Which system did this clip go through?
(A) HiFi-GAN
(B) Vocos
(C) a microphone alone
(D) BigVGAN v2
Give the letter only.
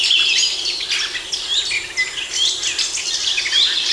C